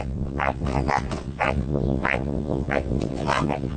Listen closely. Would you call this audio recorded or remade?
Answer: remade